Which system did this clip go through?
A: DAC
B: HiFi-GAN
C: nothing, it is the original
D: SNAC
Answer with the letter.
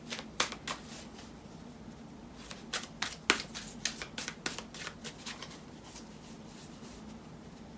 C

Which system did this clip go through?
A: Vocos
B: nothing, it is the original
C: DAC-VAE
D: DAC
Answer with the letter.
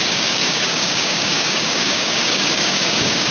D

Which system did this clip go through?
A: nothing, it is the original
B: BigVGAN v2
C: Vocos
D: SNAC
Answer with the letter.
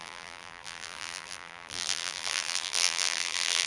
B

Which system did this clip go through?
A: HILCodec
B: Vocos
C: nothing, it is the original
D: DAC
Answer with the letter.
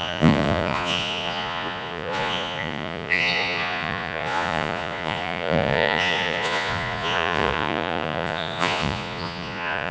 B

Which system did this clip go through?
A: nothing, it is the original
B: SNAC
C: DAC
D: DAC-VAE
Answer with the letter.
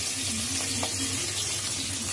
A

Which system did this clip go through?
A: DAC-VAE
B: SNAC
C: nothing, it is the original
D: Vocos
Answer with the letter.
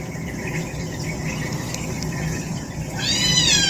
C